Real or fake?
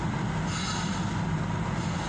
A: real